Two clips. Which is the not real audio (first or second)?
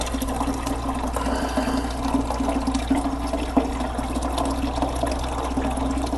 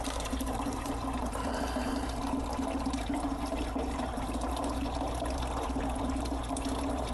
second